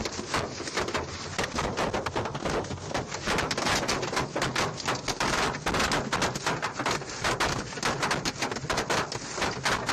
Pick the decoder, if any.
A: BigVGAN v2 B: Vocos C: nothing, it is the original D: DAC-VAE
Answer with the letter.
C